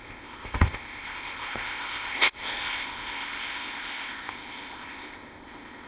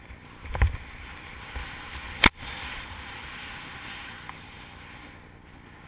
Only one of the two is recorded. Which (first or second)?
second